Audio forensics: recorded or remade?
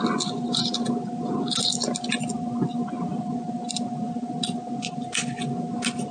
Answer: recorded